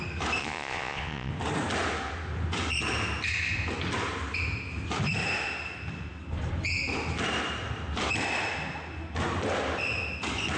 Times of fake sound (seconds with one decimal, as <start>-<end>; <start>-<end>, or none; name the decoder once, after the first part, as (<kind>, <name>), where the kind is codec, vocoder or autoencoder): 0.4-1.3 (vocoder, Vocos)